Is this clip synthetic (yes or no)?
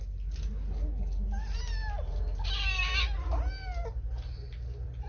no